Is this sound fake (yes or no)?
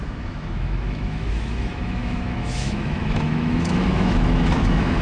yes